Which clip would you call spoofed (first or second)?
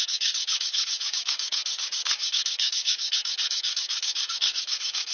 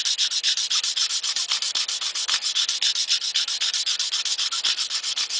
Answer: first